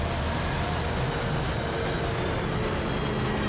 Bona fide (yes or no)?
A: yes